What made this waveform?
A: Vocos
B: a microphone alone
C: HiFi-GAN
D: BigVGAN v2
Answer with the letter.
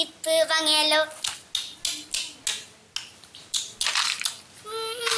B